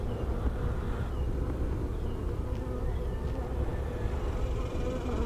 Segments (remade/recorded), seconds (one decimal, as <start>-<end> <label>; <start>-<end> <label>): 0.0-5.3 recorded